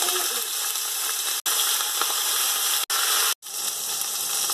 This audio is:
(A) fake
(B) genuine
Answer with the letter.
B